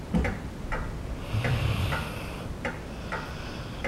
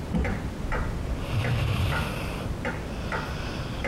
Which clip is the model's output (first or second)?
second